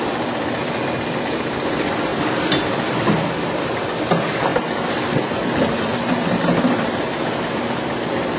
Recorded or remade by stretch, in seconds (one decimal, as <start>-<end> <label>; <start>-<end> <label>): 0.0-8.4 recorded